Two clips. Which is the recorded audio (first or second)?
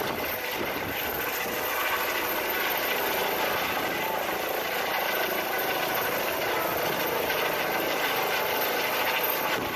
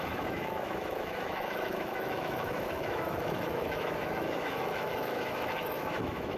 first